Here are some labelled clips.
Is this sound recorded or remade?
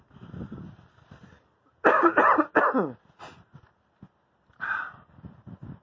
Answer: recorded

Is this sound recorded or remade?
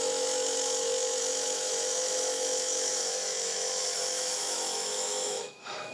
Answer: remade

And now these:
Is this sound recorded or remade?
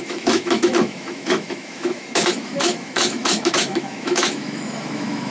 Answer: remade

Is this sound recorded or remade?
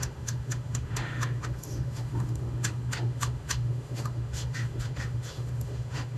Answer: remade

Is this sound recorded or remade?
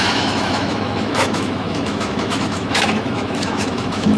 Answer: remade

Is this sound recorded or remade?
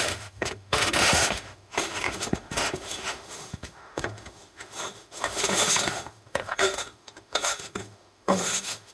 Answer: remade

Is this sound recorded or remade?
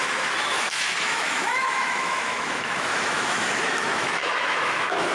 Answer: remade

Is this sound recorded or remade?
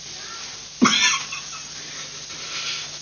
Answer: recorded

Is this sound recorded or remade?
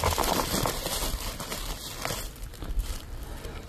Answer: recorded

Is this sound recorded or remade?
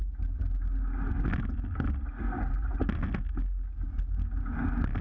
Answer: recorded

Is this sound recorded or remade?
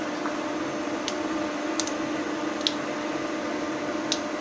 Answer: recorded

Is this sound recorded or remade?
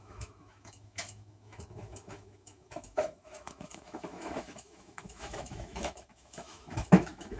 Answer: remade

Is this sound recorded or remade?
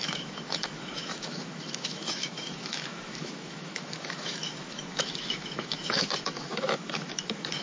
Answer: remade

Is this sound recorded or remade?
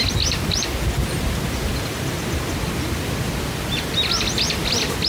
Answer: recorded